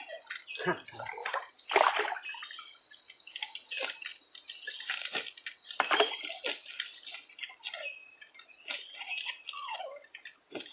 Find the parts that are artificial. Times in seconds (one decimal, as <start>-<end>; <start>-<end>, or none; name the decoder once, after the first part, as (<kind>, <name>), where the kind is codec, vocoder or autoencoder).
none